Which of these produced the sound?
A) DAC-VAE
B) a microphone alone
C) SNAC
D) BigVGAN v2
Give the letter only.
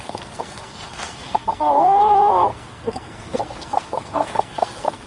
C